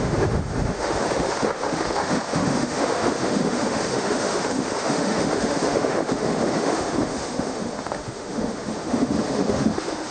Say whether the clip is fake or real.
fake